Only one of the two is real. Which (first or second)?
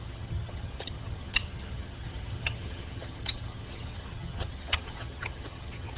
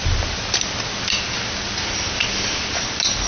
second